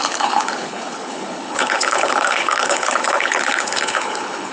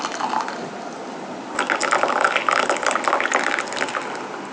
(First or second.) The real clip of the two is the second